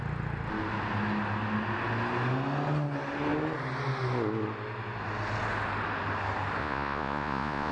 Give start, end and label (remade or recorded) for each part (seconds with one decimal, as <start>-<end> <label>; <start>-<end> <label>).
0.0-6.6 recorded; 6.6-7.7 remade